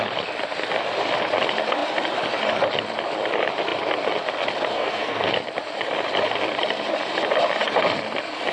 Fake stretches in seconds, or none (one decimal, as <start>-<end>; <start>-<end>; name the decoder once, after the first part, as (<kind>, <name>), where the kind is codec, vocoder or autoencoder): 4.7-5.3 (codec, SNAC)

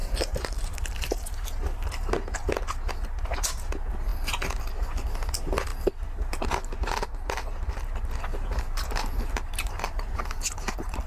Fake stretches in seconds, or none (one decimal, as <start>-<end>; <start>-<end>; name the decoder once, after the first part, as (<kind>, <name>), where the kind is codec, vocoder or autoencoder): 0.0-2.5 (vocoder, BigVGAN v2); 5.7-10.7

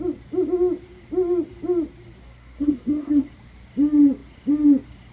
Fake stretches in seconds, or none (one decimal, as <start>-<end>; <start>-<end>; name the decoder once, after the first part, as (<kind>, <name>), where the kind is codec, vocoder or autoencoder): 2.2-3.3 (codec, SNAC)